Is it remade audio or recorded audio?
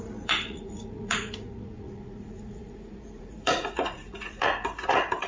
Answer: remade